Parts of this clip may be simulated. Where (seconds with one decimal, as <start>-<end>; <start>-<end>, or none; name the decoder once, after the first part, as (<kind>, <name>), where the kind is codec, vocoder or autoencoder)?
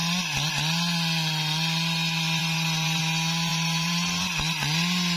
2.4-3.0 (vocoder, BigVGAN v2); 3.5-4.2